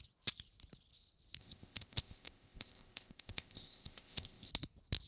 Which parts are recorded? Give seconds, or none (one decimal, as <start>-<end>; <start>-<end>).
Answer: 0.0-1.4; 4.5-5.1

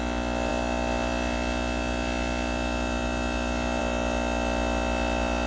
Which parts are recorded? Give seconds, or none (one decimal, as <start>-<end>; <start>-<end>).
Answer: 0.0-5.5